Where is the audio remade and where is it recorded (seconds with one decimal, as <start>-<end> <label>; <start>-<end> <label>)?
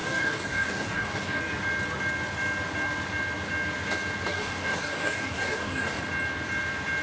0.0-1.4 remade; 1.4-4.3 recorded; 4.3-6.0 remade; 6.0-7.0 recorded